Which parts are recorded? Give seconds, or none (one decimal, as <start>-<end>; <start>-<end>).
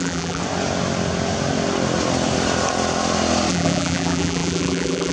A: 0.4-3.5